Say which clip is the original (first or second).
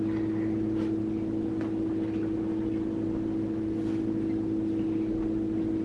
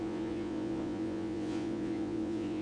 first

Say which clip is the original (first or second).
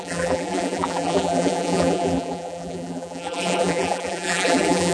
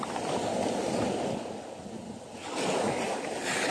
second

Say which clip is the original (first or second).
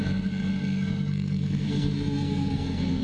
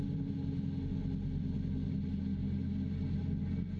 second